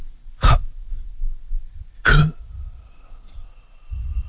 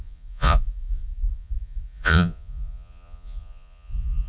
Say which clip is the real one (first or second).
first